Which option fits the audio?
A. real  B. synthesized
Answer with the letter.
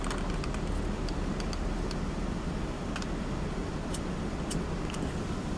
A